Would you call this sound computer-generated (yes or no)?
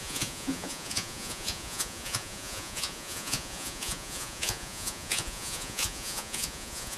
yes